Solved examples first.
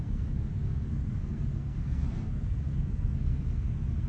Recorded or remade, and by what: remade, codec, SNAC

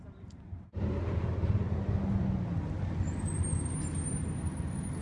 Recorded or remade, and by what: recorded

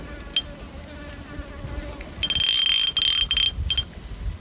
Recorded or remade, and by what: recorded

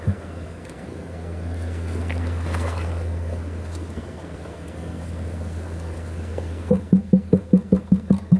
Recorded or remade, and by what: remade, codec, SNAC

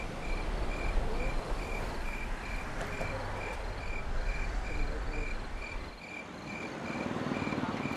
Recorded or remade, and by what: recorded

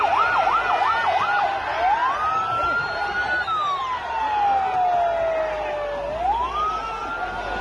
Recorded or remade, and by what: recorded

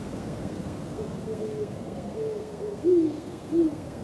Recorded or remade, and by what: remade, codec, SNAC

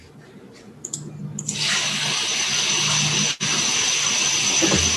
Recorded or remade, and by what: recorded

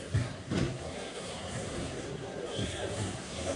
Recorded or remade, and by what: remade, codec, SNAC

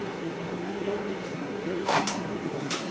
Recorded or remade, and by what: remade, codec, SNAC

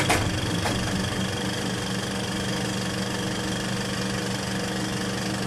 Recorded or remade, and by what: recorded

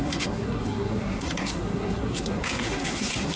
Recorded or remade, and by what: remade, codec, SNAC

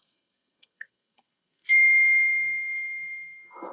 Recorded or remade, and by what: remade, codec, SNAC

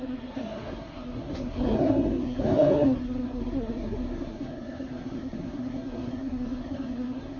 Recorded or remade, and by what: remade, codec, SNAC